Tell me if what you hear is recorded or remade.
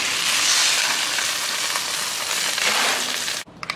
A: recorded